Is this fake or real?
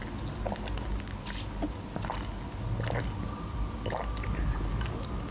real